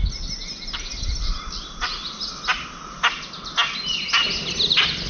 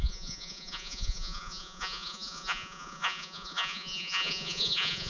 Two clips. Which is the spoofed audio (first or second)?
second